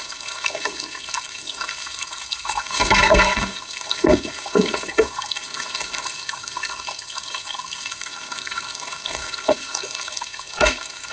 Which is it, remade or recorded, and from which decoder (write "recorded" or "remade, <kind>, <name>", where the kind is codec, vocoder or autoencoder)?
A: remade, codec, SNAC